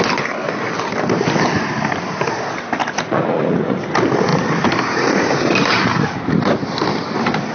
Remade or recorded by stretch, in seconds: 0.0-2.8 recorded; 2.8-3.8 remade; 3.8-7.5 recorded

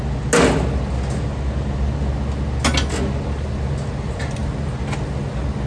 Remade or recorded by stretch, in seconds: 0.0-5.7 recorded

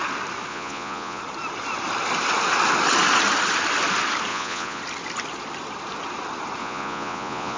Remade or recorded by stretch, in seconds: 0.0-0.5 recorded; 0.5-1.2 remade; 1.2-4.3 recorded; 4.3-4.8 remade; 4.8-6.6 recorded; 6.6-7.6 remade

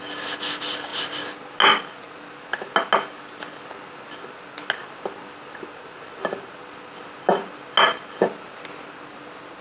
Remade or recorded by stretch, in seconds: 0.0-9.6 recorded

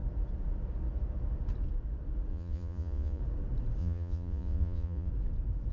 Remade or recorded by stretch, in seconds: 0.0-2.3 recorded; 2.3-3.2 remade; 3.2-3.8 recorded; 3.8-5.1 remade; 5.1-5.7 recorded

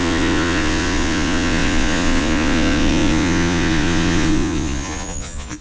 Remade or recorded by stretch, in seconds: 0.0-5.6 remade